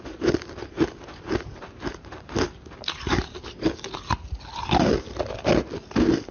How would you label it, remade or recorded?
recorded